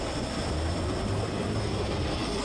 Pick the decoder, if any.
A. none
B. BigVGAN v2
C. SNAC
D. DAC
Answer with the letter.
B